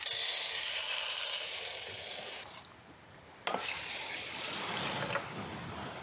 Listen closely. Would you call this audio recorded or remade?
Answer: recorded